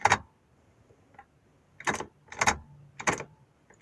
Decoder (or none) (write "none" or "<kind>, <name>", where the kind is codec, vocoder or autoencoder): none